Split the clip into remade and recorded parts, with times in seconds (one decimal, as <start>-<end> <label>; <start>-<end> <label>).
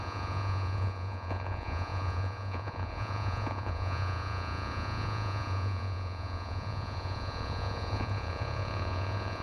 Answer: 0.0-9.4 remade